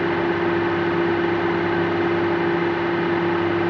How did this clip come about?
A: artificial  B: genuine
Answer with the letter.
B